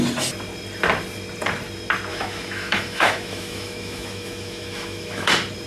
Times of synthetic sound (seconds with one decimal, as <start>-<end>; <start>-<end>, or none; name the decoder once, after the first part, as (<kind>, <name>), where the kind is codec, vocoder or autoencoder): 2.1-5.3 (autoencoder, DAC-VAE)